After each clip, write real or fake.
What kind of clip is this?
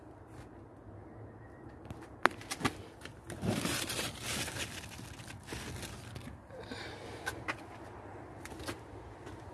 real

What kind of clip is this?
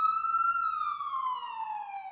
real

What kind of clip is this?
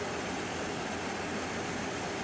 real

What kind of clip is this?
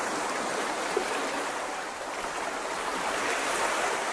real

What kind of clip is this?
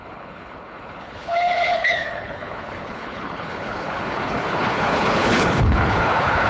fake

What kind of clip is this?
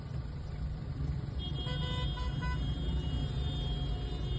real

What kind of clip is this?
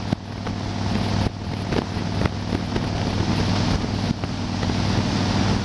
real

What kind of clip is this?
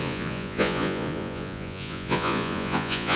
fake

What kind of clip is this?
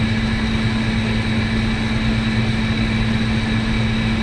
real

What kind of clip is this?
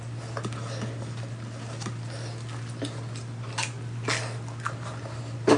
real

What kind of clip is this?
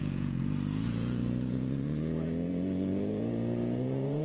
fake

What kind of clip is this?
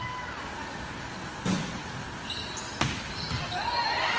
real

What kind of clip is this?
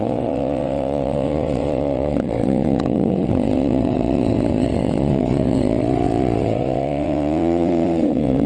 fake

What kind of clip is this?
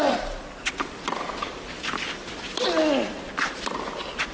real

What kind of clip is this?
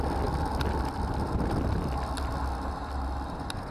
real